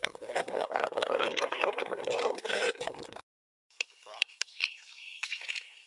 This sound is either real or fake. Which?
fake